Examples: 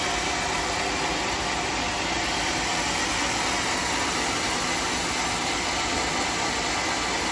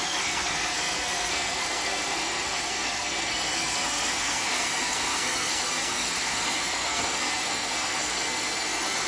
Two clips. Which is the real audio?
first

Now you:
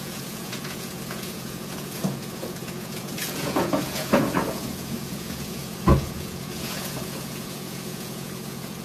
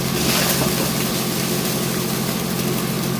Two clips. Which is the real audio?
second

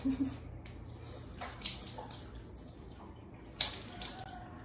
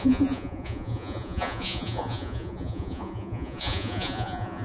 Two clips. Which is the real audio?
first